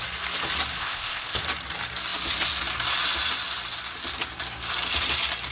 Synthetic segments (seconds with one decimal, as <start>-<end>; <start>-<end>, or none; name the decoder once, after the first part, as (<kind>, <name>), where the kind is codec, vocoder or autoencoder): 0.8-1.4 (codec, ZipCodec)

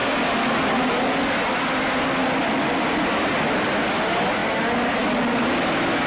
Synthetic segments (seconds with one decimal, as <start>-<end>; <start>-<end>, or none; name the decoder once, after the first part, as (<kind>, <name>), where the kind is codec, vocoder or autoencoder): none

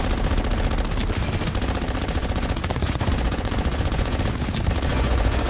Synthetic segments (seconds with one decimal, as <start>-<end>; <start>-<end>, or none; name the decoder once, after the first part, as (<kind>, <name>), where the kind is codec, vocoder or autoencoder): 2.2-4.2 (vocoder, Vocos); 4.9-5.5

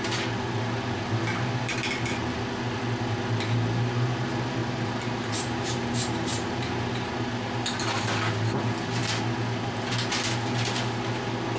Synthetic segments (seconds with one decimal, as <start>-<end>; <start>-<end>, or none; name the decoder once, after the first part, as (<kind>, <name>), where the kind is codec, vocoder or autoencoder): 4.6-7.1 (vocoder, BigVGAN v2)

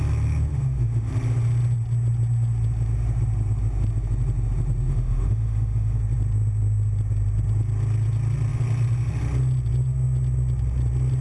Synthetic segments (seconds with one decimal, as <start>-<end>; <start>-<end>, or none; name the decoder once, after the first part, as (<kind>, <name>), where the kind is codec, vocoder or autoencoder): 0.5-1.1 (autoencoder, DAC-VAE); 4.9-6.0

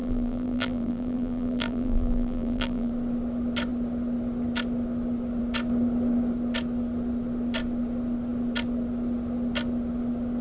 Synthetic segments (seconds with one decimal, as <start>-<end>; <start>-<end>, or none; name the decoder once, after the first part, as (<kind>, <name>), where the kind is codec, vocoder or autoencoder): 0.0-2.9 (vocoder, BigVGAN v2)

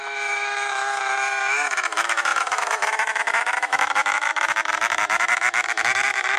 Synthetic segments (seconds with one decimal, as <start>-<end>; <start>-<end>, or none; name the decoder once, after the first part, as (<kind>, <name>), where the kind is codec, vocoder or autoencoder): 0.0-6.4 (autoencoder, DAC-VAE)

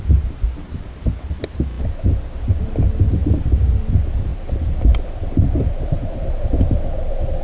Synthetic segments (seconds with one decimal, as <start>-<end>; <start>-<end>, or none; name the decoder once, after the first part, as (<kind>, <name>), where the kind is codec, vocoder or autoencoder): 4.3-6.2 (vocoder, BigVGAN v2)